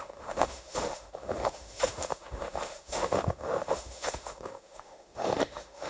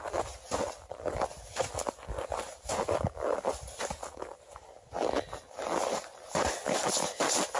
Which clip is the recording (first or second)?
second